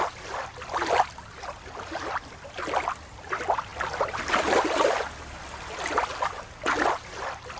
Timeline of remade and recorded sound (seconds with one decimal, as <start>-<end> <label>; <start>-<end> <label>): 0.0-7.6 recorded